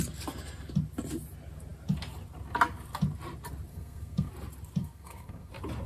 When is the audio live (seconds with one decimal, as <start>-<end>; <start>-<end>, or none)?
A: 0.0-3.7; 4.3-4.8; 5.5-5.9